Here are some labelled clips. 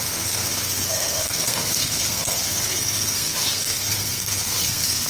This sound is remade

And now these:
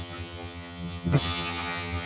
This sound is remade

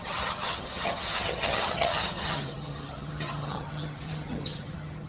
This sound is remade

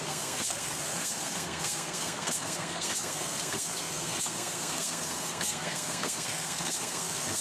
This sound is remade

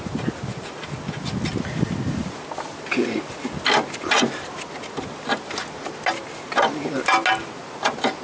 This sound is recorded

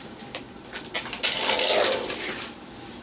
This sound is recorded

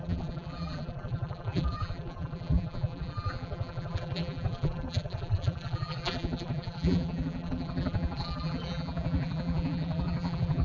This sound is remade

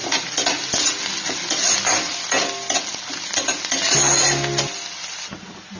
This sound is recorded